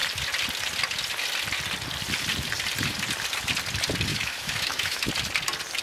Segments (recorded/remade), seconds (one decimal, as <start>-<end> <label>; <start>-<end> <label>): 0.0-4.1 recorded; 4.1-5.1 remade; 5.1-5.8 recorded